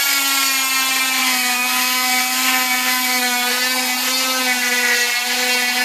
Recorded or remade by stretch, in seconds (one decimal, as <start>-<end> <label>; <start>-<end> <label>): 0.0-1.2 recorded; 1.2-3.5 remade; 3.5-5.8 recorded